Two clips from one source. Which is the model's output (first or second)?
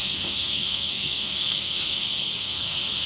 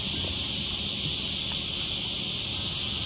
first